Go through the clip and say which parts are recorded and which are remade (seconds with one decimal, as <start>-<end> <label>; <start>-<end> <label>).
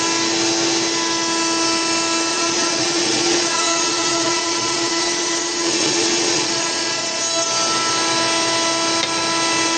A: 0.0-2.3 recorded; 2.3-7.2 remade; 7.2-9.8 recorded